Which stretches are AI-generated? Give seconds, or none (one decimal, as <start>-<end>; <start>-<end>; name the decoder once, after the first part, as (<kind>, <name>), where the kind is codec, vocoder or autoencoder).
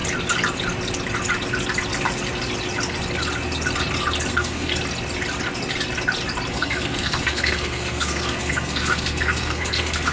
4.3-4.7 (codec, SNAC); 6.5-10.1